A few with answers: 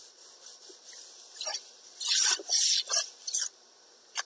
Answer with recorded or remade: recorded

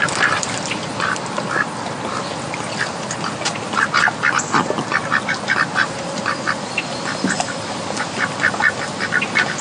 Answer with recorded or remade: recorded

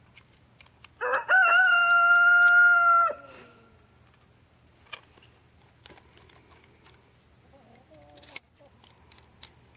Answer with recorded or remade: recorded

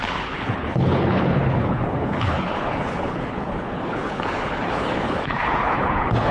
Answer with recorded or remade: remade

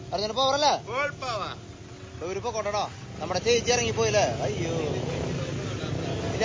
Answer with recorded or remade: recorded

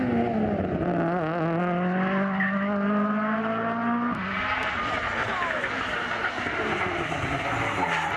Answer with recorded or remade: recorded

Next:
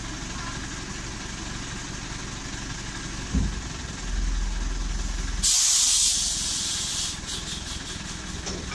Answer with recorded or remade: recorded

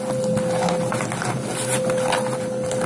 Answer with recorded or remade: recorded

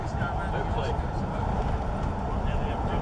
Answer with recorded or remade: recorded